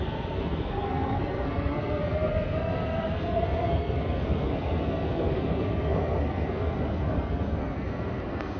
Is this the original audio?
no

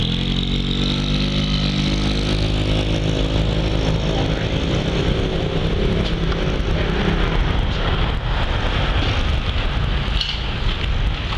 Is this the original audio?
yes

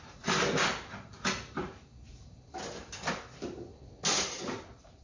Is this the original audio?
yes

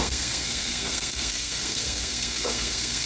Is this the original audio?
no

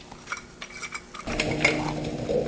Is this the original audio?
yes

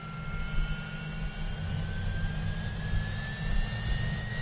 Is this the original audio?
yes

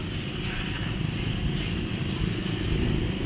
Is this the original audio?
yes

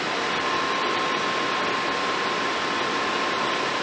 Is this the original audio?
yes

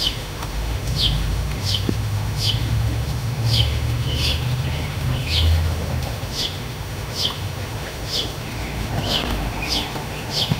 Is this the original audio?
no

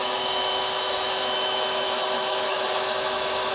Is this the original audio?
no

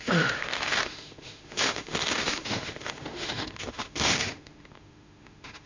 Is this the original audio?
no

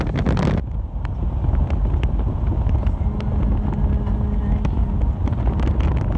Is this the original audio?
yes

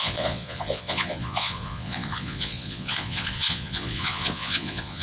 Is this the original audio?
no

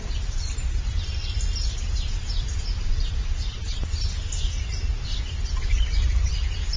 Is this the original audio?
yes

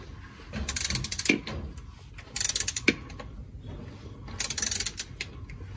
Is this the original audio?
yes